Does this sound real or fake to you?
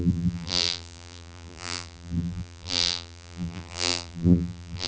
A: fake